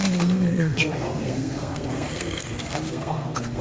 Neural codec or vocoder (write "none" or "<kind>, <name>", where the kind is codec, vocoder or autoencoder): codec, SNAC